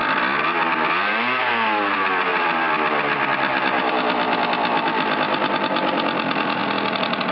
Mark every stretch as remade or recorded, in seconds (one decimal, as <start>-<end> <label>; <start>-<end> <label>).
0.0-1.5 remade; 1.5-2.3 recorded; 2.3-3.9 remade; 3.9-6.6 recorded; 6.6-7.3 remade

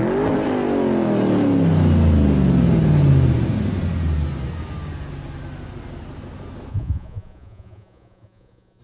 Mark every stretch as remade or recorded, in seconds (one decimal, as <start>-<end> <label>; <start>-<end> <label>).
0.0-6.7 recorded; 6.7-8.8 remade

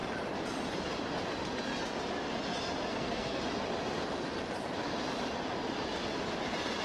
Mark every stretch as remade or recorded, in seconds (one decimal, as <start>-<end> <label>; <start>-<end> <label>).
0.0-2.9 recorded; 2.9-3.4 remade; 3.4-6.8 recorded